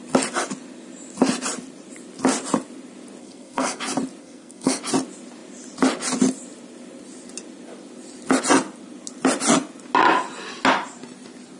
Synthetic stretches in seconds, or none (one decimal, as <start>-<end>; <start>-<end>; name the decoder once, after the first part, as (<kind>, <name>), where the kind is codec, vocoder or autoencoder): 3.2-3.8 (codec, SNAC); 4.2-4.8